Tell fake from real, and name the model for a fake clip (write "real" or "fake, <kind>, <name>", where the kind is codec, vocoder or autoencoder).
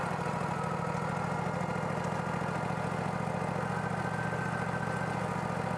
real